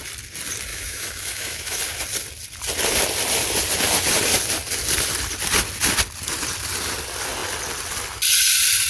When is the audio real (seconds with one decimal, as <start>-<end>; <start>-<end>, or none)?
0.0-0.7; 1.8-8.9

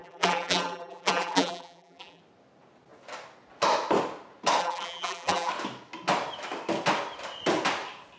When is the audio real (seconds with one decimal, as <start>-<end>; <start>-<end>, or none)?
2.2-4.6; 5.5-8.2

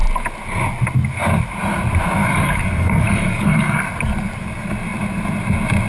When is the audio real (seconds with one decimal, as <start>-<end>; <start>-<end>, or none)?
0.0-2.2; 3.8-5.9

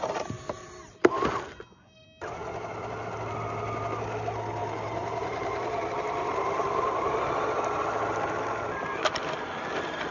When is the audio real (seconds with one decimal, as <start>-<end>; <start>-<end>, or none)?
0.0-4.6; 7.1-10.1

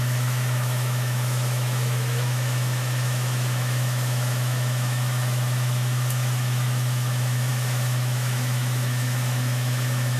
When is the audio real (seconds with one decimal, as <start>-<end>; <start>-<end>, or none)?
none